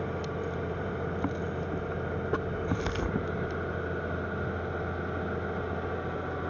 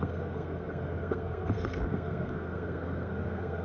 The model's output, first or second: second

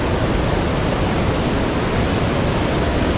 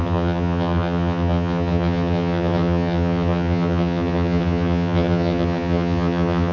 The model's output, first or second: second